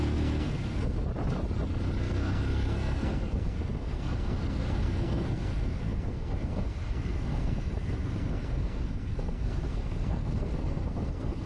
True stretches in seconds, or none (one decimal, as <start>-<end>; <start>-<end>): 1.1-2.0